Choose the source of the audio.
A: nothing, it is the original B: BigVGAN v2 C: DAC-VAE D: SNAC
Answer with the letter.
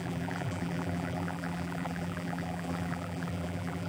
B